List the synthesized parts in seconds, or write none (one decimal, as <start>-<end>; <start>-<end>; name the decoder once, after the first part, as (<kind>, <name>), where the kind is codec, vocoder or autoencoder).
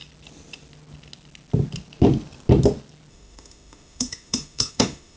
3.1-5.2 (autoencoder, DAC-VAE)